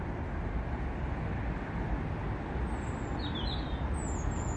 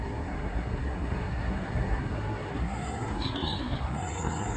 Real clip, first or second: first